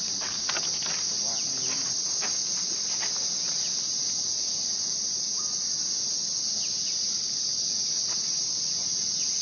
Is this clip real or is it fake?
real